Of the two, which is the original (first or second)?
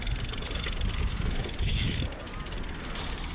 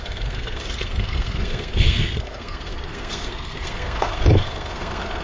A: first